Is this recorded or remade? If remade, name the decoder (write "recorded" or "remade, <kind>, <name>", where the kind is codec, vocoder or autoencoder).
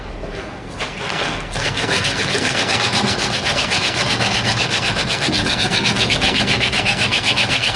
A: remade, codec, SNAC